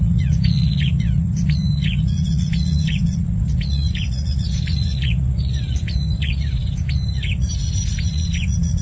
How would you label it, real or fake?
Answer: fake